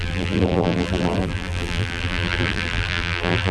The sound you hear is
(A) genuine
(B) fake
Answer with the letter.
B